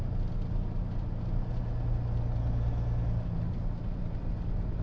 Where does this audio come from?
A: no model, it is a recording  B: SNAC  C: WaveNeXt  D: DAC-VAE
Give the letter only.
A